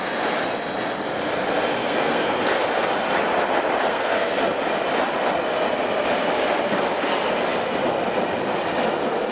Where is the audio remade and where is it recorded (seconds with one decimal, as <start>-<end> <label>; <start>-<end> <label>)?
0.0-1.8 recorded; 1.8-2.4 remade; 2.4-3.9 recorded; 3.9-4.4 remade; 4.4-9.3 recorded